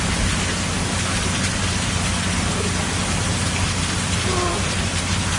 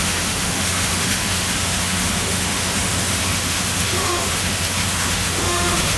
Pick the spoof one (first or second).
second